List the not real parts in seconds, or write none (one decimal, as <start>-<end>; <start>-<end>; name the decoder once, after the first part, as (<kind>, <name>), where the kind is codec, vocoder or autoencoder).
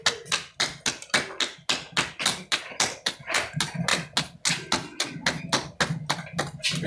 none